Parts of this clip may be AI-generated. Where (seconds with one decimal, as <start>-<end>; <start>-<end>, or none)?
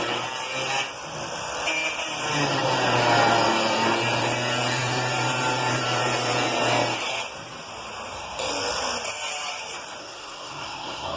10.0-11.2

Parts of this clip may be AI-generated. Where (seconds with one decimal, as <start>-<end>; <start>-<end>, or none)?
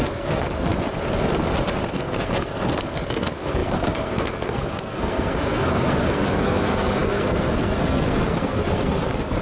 0.0-0.7; 1.9-9.4